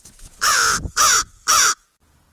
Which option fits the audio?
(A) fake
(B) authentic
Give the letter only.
A